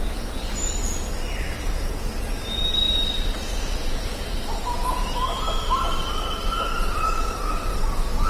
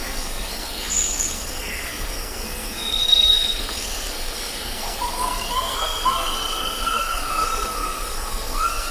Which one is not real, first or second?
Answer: second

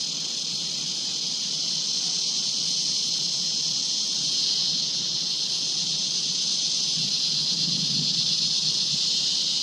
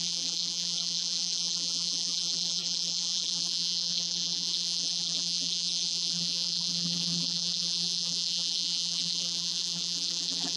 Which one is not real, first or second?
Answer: second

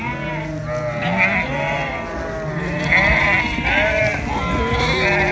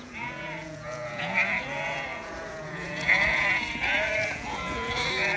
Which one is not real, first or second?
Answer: second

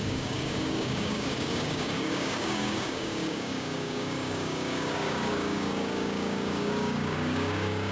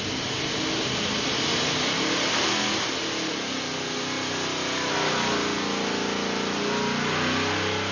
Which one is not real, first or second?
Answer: first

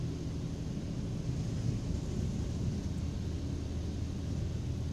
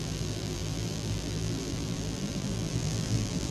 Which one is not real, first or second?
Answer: second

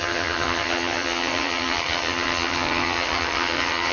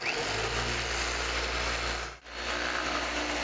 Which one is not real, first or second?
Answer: first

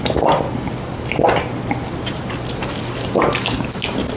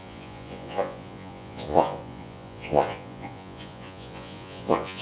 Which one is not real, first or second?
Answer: second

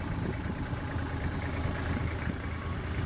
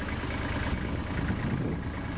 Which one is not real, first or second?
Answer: first